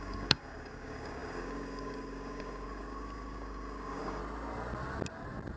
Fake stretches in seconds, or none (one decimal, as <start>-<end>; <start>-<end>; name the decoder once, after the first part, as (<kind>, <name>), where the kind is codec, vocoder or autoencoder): 0.0-4.2 (codec, DAC)